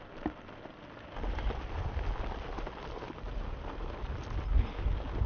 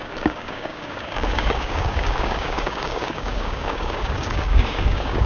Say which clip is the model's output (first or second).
second